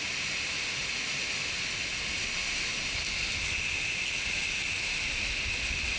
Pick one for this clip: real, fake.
real